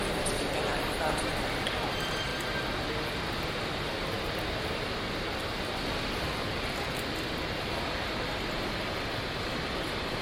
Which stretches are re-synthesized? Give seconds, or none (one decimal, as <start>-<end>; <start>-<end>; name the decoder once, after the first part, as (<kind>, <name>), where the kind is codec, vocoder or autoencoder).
none